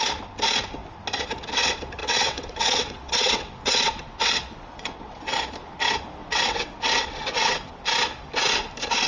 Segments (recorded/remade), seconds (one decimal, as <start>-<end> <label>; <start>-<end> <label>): 0.0-2.0 recorded; 2.0-5.4 remade; 5.4-6.2 recorded; 6.2-7.7 remade; 7.7-9.1 recorded